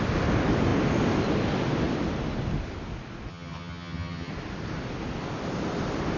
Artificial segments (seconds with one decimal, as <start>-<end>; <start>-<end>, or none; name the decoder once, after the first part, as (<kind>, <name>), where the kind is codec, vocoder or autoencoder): 3.3-4.3 (vocoder, HiFi-GAN)